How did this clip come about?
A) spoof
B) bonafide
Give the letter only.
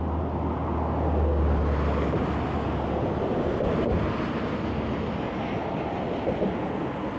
B